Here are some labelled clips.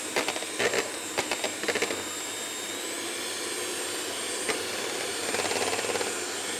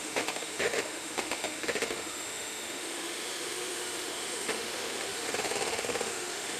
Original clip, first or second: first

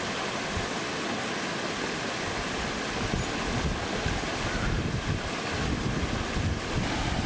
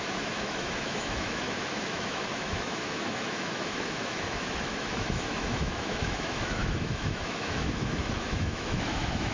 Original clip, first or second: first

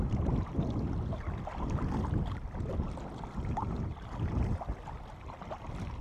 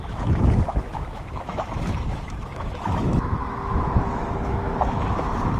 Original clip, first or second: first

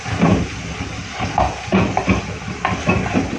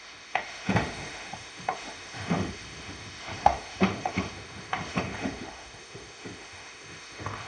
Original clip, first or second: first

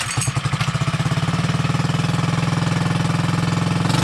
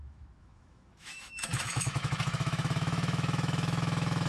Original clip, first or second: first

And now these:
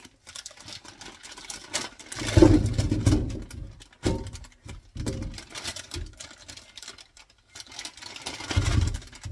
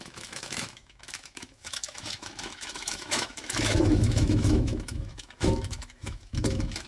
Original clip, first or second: first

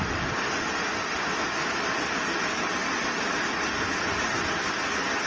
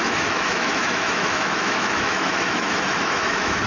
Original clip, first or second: first